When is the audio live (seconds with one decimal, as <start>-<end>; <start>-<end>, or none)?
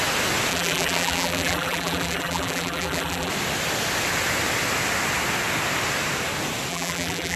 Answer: 0.0-0.5; 3.3-6.7